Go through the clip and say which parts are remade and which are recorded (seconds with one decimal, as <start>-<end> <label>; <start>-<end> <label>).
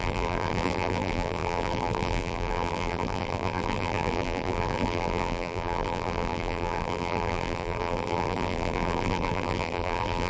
0.0-10.3 remade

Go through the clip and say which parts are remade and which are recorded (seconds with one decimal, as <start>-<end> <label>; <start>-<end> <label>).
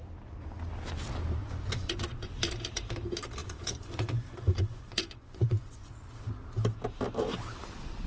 0.0-1.4 recorded; 1.4-2.4 remade; 2.4-3.4 recorded; 3.4-6.1 remade; 6.1-8.1 recorded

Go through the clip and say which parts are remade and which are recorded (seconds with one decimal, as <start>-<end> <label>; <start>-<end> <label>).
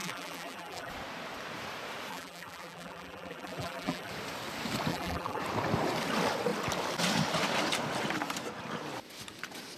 0.0-0.9 remade; 0.9-2.1 recorded; 2.1-4.1 remade; 4.1-4.9 recorded; 4.9-5.4 remade; 5.4-9.8 recorded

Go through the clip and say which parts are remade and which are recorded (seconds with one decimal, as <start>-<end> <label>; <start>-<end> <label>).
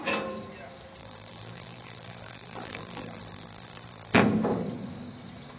0.0-1.0 recorded; 1.0-4.2 remade; 4.2-5.6 recorded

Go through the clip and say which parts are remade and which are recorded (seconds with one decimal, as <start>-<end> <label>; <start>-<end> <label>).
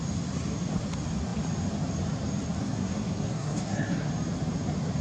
0.0-2.6 recorded; 2.6-4.1 remade; 4.1-5.0 recorded